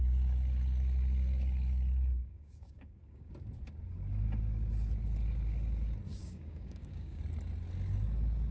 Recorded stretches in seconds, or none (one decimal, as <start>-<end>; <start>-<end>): 0.0-2.2; 3.3-6.1; 7.2-8.5